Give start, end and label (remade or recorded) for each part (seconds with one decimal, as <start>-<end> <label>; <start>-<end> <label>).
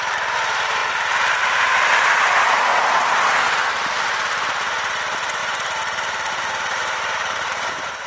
0.0-2.7 remade; 2.7-3.9 recorded; 3.9-8.1 remade